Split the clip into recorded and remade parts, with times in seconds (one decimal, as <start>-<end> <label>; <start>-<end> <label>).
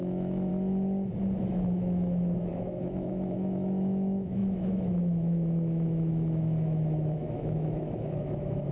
0.0-0.5 remade; 0.5-1.4 recorded; 1.4-8.7 remade